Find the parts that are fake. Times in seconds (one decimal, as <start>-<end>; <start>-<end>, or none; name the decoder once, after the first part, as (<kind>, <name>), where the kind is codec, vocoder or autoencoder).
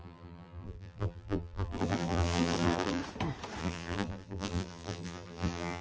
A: 0.0-3.0 (vocoder, BigVGAN v2); 3.6-5.8